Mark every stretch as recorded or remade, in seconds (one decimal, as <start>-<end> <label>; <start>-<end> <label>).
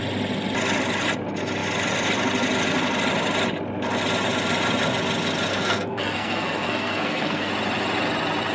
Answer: 0.0-5.5 recorded; 5.5-7.5 remade; 7.5-8.5 recorded